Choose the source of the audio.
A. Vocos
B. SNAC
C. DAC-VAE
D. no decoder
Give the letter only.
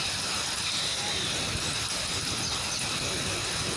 D